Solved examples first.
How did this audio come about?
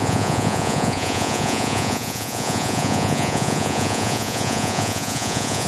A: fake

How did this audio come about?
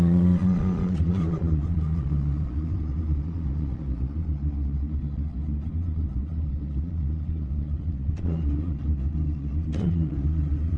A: fake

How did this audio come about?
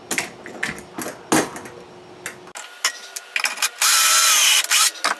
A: real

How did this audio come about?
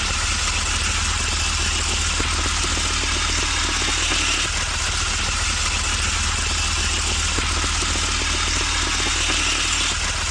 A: real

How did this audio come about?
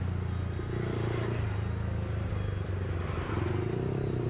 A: real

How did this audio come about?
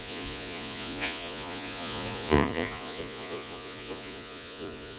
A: fake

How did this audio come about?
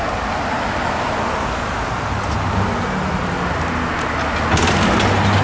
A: real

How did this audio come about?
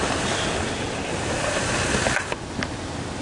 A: real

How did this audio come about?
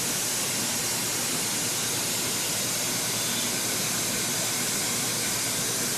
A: real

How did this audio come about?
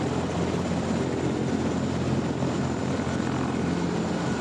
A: real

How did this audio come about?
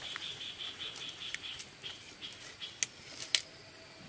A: real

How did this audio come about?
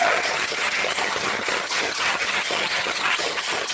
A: fake